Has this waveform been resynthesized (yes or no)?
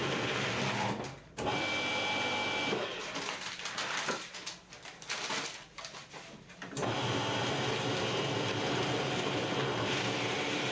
no